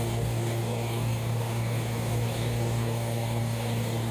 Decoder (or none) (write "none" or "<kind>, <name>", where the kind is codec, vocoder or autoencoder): codec, DAC